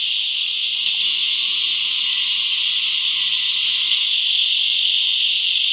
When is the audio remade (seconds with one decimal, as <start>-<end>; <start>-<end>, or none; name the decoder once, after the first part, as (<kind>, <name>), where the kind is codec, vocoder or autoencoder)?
0.5-3.2 (vocoder, BigVGAN v2)

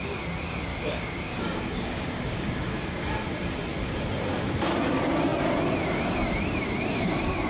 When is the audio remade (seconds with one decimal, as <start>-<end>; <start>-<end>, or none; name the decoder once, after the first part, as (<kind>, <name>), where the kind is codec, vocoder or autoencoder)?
0.7-3.1 (codec, DAC)

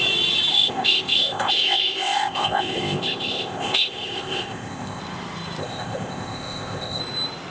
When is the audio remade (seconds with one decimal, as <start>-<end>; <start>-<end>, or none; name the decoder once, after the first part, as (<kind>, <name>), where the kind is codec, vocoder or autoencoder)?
0.5-5.0 (codec, ZipCodec); 5.6-7.0

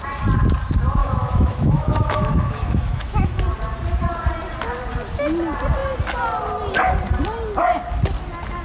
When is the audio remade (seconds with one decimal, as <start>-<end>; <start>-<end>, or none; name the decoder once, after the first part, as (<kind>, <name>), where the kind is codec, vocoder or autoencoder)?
1.0-3.4 (autoencoder, DAC-VAE)